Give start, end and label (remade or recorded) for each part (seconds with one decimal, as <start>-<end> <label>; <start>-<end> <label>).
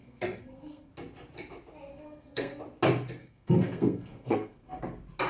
0.0-0.9 remade; 0.9-1.9 recorded; 1.9-2.6 remade; 2.6-3.2 recorded; 3.2-4.8 remade; 4.8-5.3 recorded